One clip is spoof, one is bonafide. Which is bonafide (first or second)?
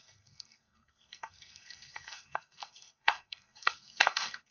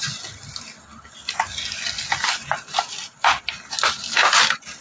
second